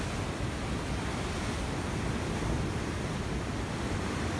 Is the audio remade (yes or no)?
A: no